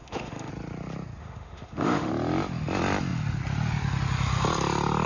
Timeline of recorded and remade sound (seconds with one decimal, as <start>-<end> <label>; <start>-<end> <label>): 0.0-0.5 remade; 0.5-1.2 recorded; 1.2-2.1 remade; 2.1-5.1 recorded